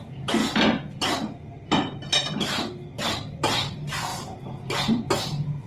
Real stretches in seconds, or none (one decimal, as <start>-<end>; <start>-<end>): 0.0-5.7